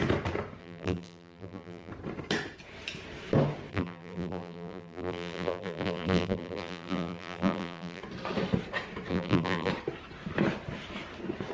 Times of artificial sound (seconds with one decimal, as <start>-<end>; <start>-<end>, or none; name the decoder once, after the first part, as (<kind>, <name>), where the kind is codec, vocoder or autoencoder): 0.6-1.9 (vocoder, BigVGAN v2); 3.7-8.0; 9.1-9.7